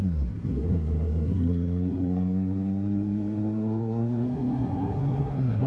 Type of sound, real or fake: fake